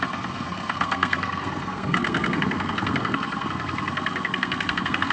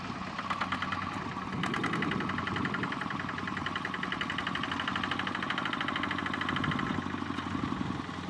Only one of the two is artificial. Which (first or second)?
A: first